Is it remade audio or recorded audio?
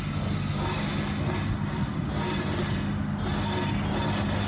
recorded